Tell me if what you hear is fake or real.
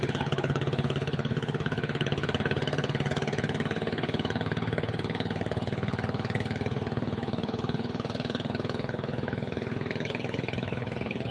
fake